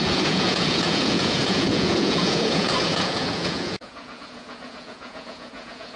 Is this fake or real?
fake